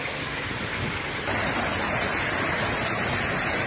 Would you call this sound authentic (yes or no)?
yes